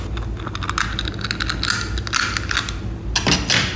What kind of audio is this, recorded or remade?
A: recorded